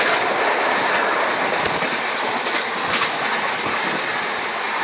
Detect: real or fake real